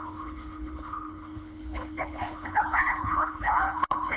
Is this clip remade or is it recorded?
remade